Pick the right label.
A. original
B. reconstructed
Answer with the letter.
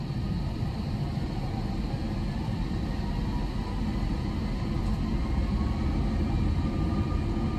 A